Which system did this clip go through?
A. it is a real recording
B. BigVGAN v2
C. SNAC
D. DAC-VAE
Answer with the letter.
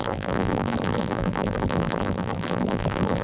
B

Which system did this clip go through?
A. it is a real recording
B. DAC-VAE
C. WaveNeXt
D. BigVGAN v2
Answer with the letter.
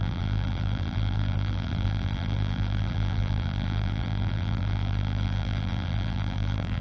D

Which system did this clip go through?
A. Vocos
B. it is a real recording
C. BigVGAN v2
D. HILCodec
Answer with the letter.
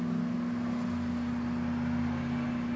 B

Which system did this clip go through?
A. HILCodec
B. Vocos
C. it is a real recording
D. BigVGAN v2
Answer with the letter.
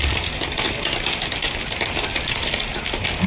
C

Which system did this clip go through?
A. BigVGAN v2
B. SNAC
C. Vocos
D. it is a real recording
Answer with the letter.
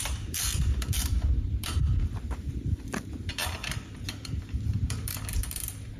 A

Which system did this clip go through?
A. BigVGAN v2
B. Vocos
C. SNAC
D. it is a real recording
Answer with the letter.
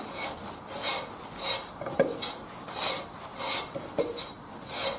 D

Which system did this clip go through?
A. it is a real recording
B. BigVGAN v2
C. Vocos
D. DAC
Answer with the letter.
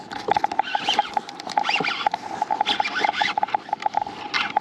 A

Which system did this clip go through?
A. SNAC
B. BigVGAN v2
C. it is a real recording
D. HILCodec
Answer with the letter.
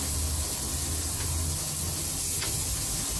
C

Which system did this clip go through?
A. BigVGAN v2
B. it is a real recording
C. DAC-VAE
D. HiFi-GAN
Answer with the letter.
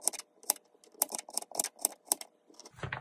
B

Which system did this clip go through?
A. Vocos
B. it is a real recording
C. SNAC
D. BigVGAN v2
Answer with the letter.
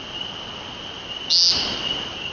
B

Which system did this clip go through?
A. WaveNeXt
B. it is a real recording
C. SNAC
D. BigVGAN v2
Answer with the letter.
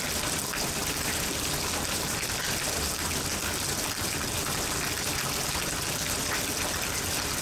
D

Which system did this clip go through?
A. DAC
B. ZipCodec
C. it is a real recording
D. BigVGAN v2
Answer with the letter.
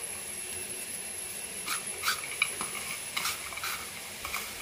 C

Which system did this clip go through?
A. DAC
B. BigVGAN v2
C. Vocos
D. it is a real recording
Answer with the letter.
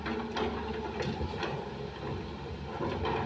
D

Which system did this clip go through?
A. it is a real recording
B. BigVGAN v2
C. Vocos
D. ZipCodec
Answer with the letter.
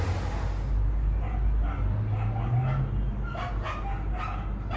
A